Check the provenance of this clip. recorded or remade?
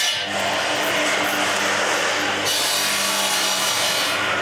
recorded